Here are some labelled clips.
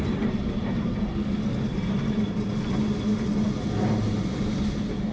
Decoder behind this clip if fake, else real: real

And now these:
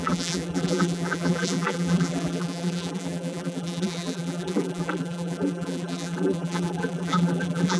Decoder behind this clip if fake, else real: fake, vocoder, BigVGAN v2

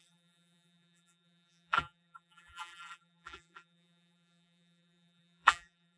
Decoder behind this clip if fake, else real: fake, vocoder, BigVGAN v2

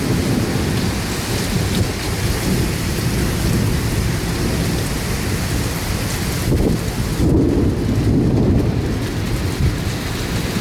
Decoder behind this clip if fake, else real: real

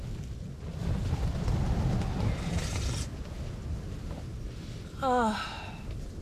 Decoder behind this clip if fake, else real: real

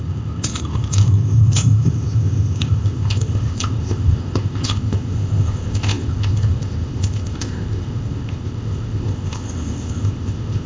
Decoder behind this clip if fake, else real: fake, codec, ZipCodec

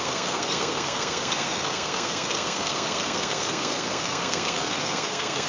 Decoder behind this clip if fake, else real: fake, codec, SNAC